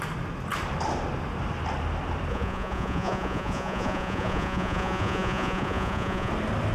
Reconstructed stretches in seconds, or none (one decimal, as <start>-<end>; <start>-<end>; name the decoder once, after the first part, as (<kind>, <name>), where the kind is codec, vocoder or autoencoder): 2.3-6.3 (vocoder, Vocos)